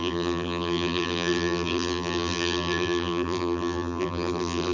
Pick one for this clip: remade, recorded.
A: remade